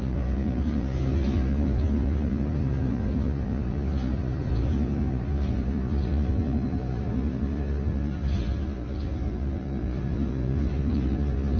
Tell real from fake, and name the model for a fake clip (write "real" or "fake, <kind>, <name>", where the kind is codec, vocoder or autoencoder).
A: fake, vocoder, Vocos